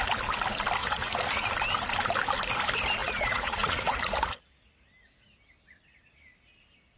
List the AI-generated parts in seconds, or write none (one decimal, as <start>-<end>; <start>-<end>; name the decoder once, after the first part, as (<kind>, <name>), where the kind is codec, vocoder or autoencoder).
0.8-1.5 (vocoder, Vocos); 3.0-4.3

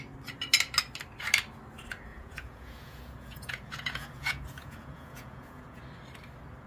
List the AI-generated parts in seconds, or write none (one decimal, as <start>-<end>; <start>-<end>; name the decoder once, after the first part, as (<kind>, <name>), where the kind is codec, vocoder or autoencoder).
2.1-5.8 (vocoder, Vocos)

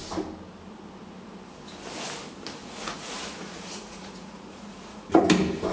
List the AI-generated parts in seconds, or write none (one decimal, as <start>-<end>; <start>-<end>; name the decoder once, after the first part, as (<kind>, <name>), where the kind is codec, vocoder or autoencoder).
2.6-5.2 (vocoder, Vocos)

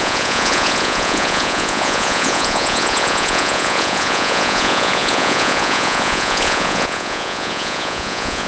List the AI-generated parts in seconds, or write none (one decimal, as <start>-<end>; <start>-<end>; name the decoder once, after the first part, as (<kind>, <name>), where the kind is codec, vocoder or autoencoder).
0.0-8.5 (vocoder, Vocos)